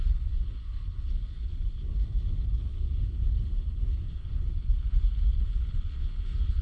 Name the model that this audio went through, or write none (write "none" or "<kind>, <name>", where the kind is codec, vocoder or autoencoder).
codec, HILCodec